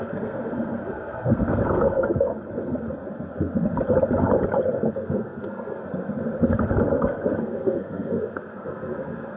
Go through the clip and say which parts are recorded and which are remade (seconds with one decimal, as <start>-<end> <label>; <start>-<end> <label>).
0.0-2.3 remade; 2.3-4.9 recorded; 4.9-5.8 remade; 5.8-6.8 recorded; 6.8-9.4 remade